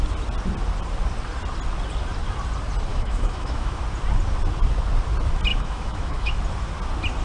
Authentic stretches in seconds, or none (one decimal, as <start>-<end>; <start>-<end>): 0.0-2.9; 3.8-5.5; 6.4-7.2